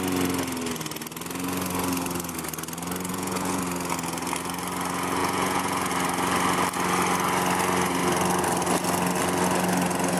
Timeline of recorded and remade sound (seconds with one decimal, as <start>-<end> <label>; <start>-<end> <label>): 0.0-3.1 recorded; 3.1-3.6 remade; 3.6-5.2 recorded; 5.2-5.9 remade; 5.9-10.2 recorded